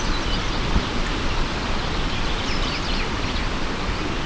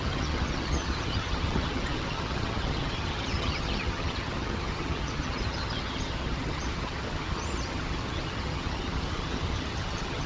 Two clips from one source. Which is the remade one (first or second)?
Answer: second